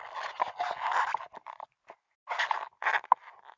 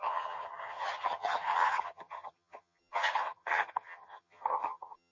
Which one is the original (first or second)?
first